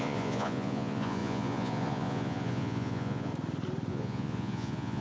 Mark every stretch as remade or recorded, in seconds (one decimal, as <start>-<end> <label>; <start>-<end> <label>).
0.0-3.3 remade; 3.3-3.9 recorded; 3.9-5.0 remade

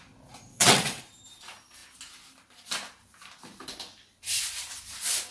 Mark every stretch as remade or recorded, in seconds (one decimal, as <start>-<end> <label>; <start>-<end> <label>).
0.0-0.5 recorded; 0.5-1.0 remade; 1.0-5.3 recorded

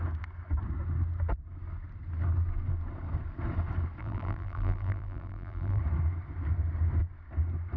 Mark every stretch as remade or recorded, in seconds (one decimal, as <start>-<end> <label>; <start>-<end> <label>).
0.0-4.0 recorded; 4.0-5.8 remade; 5.8-7.8 recorded

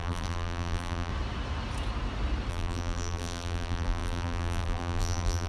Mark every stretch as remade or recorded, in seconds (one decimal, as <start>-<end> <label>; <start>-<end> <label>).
0.0-1.1 remade; 1.1-2.5 recorded; 2.5-5.5 remade

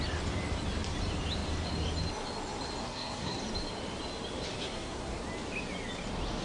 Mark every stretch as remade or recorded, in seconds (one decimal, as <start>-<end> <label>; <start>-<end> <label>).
0.0-2.8 recorded; 2.8-3.4 remade; 3.4-4.6 recorded; 4.6-5.2 remade; 5.2-6.4 recorded

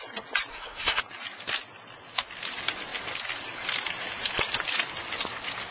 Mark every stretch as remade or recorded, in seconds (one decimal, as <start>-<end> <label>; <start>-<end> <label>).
0.0-0.5 recorded; 0.5-1.0 remade; 1.0-5.7 recorded